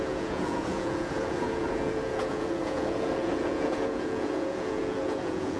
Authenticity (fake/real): fake